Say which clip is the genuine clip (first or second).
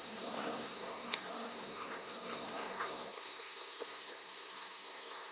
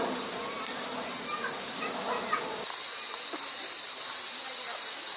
second